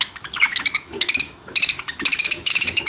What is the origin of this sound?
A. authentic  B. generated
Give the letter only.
B